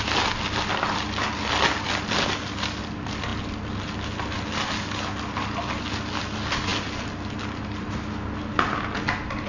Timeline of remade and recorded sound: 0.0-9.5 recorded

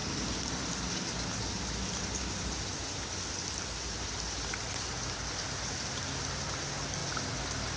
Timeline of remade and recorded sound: 0.0-7.8 recorded

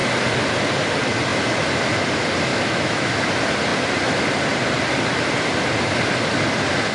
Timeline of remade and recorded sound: 0.0-2.5 recorded; 2.5-3.1 remade; 3.1-6.9 recorded

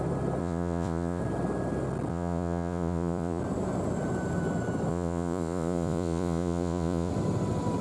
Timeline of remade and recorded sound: 0.0-0.4 recorded; 0.4-1.2 remade; 1.2-2.1 recorded; 2.1-3.4 remade; 3.4-4.9 recorded; 4.9-7.1 remade; 7.1-7.8 recorded

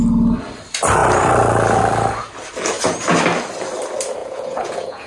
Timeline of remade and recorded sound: 0.0-4.2 recorded; 4.2-5.1 remade

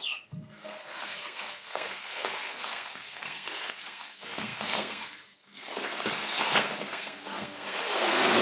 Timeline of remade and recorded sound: 0.0-8.4 remade